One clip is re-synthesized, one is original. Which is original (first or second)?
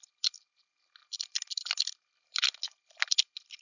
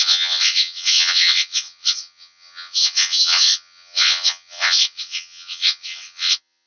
first